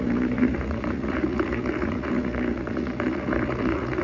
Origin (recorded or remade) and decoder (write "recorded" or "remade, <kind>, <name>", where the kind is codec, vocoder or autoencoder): remade, vocoder, Vocos